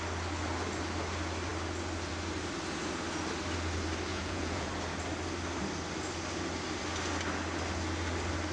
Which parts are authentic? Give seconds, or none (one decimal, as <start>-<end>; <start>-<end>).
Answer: 0.0-4.1; 4.7-8.5